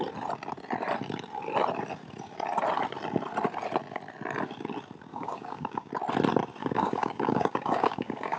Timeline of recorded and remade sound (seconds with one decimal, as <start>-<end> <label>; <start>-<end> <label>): 0.0-5.1 recorded; 5.1-5.9 remade; 5.9-6.6 recorded; 6.6-8.4 remade